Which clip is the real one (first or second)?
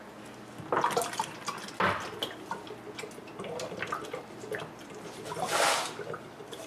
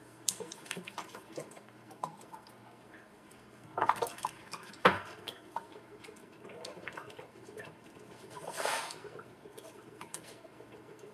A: first